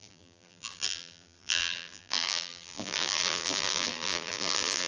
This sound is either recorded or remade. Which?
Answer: remade